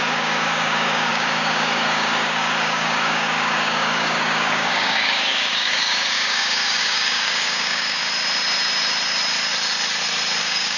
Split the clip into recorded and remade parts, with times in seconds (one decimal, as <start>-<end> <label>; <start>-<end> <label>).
0.0-8.0 remade; 8.0-10.4 recorded; 10.4-10.8 remade